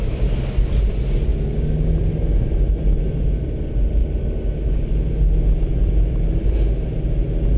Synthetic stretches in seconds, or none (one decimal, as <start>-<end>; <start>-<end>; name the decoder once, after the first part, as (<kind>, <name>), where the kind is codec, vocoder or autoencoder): none